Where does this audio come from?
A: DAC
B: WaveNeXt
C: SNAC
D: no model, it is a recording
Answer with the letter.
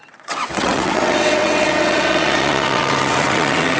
B